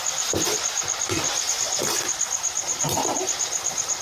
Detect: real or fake fake